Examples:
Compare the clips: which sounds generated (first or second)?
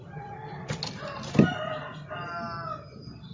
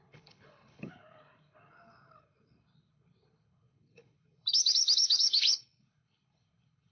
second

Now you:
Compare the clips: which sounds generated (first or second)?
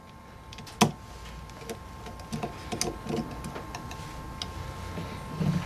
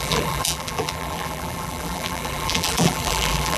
second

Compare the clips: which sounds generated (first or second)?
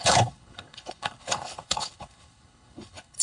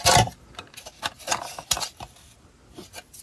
first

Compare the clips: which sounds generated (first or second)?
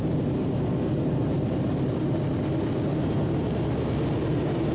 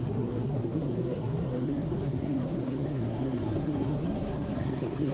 second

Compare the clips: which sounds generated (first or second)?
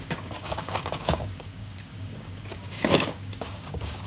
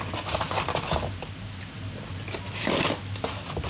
first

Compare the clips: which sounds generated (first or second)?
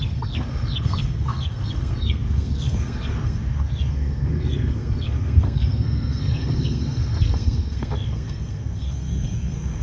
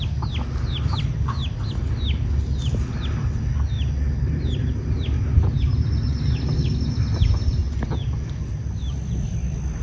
first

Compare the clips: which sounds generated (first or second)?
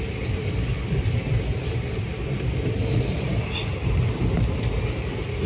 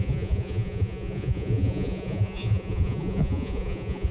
second